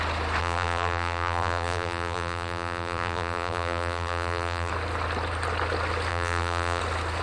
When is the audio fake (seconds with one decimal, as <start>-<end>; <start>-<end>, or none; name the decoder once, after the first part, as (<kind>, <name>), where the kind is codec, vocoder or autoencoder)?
0.4-4.7 (vocoder, BigVGAN v2); 6.1-6.8